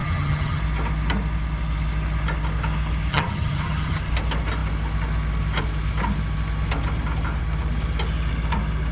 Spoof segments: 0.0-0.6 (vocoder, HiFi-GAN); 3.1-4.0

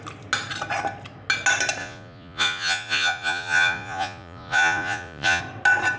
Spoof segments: 1.8-5.4 (vocoder, Vocos)

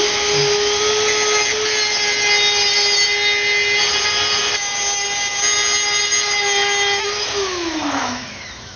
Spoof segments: 7.0-8.8 (autoencoder, DAC-VAE)

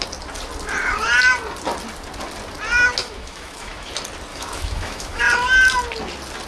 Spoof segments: 3.0-3.9 (autoencoder, DAC-VAE); 4.3-5.2

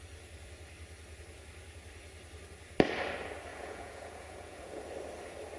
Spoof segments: 3.5-4.8 (vocoder, Vocos)

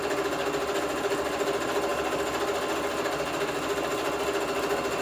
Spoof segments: none

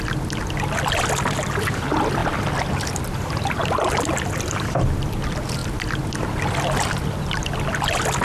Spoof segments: none

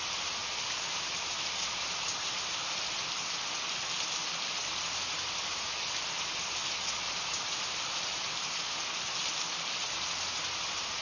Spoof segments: none